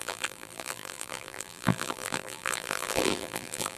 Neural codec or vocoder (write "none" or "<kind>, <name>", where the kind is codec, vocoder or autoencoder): vocoder, BigVGAN v2